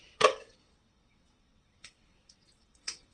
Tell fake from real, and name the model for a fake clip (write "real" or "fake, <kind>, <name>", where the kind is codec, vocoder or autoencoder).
fake, vocoder, WaveNeXt